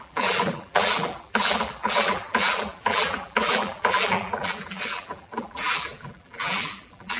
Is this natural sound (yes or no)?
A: no